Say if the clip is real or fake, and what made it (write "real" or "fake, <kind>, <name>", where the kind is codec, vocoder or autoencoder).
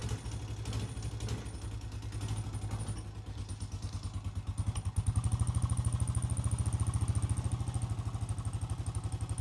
real